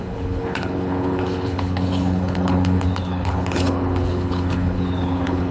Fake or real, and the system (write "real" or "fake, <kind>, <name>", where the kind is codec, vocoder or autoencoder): fake, codec, HILCodec